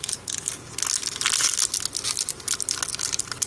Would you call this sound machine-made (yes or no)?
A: no